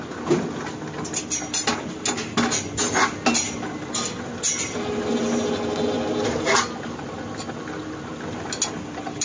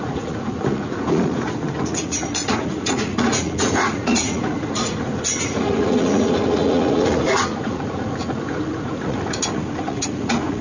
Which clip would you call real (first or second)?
first